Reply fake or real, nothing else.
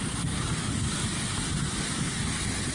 real